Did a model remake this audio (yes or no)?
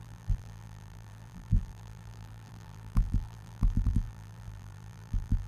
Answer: yes